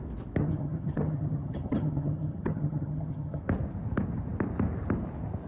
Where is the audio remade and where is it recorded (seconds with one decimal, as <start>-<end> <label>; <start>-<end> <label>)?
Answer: 0.0-0.4 recorded; 0.4-3.4 remade; 3.4-5.5 recorded